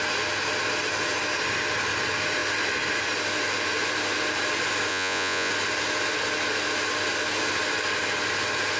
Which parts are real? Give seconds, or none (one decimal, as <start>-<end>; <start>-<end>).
0.0-4.9; 5.5-8.8